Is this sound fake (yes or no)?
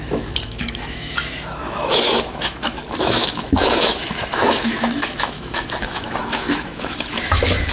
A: yes